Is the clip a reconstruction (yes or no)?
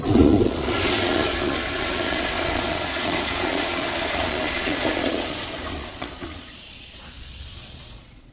yes